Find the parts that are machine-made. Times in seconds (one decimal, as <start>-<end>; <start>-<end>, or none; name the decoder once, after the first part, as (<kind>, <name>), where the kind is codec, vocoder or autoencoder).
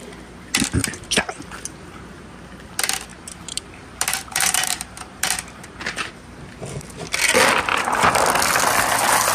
0.8-1.5 (vocoder, BigVGAN v2); 3.1-6.1